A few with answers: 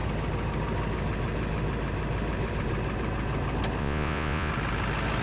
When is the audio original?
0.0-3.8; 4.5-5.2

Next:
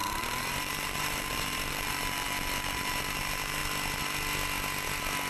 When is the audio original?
3.6-5.3

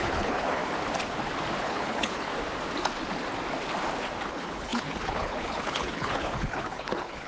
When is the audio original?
0.6-1.6; 2.3-4.3